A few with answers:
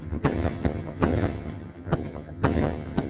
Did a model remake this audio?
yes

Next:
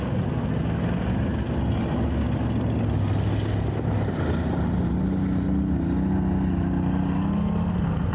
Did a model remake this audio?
no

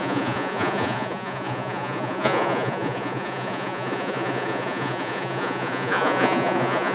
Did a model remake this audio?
yes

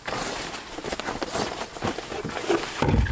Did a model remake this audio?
no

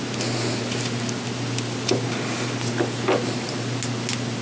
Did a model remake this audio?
no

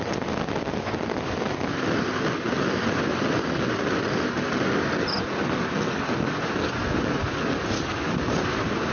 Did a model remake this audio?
no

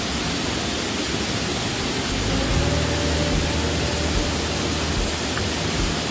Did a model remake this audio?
no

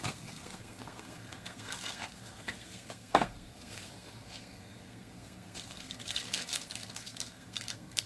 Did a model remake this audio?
yes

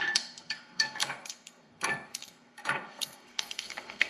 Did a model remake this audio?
yes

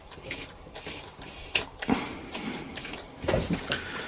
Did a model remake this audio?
yes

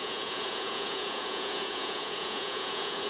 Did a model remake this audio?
yes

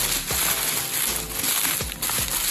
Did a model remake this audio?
no